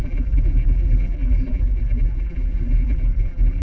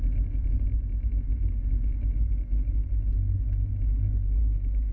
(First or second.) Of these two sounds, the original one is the second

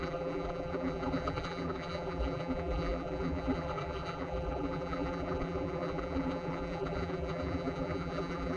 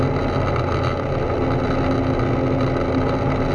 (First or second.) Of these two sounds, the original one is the second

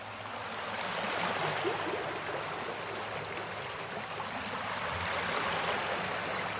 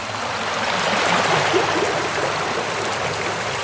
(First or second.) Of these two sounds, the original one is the first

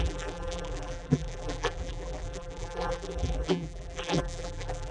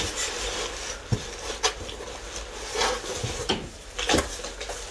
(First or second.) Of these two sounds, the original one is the second